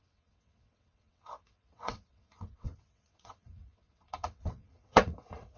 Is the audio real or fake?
fake